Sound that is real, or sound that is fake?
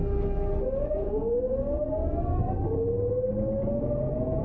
real